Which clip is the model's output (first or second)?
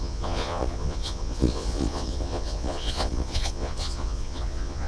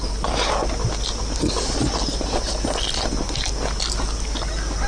first